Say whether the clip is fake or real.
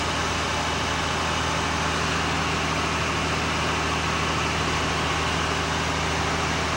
real